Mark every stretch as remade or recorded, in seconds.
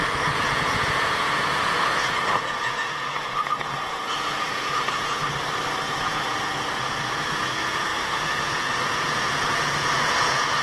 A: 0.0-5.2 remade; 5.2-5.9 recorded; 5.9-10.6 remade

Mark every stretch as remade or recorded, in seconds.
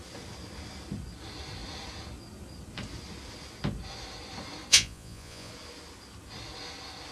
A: 0.0-4.7 recorded; 4.7-5.5 remade; 5.5-7.1 recorded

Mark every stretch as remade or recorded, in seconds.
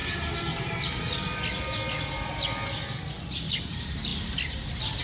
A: 0.0-5.0 recorded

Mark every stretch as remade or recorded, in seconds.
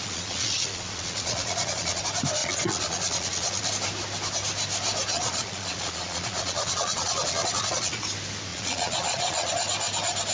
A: 0.0-2.0 remade; 2.0-2.4 recorded; 2.4-3.7 remade; 3.7-5.1 recorded; 5.1-8.0 remade; 8.0-8.5 recorded; 8.5-9.5 remade; 9.5-10.3 recorded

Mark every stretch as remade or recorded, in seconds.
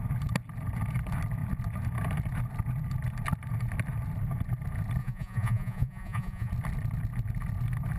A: 0.0-5.0 recorded; 5.0-6.5 remade; 6.5-8.0 recorded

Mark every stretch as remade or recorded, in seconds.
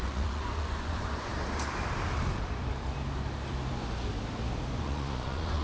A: 0.0-1.3 remade; 1.3-4.7 recorded; 4.7-5.6 remade